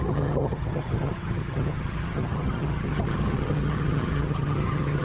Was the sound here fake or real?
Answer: fake